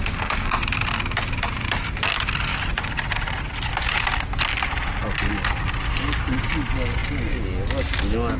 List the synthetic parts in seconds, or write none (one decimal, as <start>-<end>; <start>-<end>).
2.5-3.4